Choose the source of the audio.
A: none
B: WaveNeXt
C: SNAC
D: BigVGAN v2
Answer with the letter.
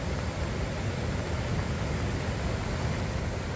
A